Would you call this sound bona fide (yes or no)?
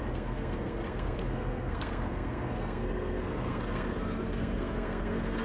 no